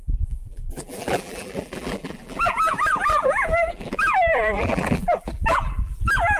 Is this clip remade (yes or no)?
yes